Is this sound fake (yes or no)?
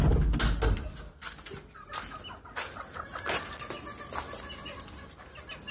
no